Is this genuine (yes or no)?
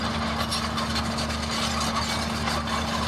yes